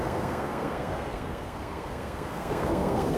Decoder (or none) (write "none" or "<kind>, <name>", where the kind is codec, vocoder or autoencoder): codec, SNAC